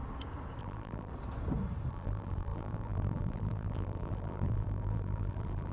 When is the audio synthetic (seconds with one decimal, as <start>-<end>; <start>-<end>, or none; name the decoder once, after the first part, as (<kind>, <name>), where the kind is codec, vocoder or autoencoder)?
0.6-1.1 (vocoder, BigVGAN v2); 1.9-5.7